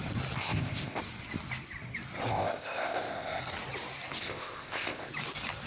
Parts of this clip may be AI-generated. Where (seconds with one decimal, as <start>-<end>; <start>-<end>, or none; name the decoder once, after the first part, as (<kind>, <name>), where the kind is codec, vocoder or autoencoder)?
0.4-1.0 (codec, ZipCodec); 2.3-3.4; 4.2-5.1